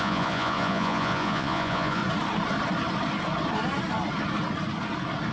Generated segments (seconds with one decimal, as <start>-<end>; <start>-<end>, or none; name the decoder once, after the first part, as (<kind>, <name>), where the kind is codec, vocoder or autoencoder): 0.0-2.0 (vocoder, Vocos)